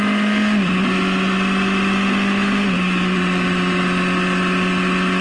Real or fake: real